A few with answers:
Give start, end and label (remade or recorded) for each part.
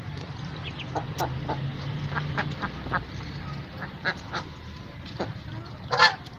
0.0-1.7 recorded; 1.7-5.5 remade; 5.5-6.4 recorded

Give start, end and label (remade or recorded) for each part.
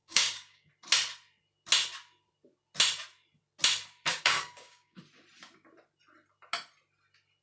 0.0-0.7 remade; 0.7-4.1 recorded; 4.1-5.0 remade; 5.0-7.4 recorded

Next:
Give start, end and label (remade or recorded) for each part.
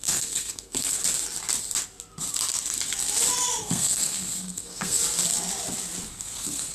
0.0-1.0 remade; 1.0-3.6 recorded; 3.6-5.0 remade; 5.0-6.1 recorded; 6.1-6.7 remade